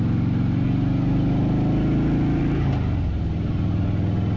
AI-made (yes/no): no